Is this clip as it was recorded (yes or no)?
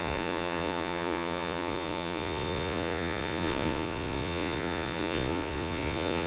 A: no